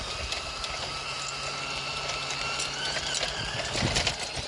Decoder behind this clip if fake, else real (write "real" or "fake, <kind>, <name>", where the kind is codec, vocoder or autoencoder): real